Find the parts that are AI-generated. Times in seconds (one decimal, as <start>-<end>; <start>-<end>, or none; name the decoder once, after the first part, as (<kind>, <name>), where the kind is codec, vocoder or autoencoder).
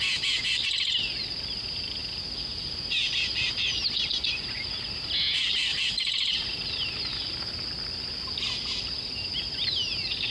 5.7-7.7 (vocoder, BigVGAN v2)